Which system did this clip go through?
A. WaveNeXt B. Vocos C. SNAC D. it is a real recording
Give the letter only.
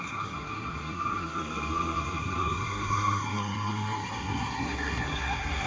C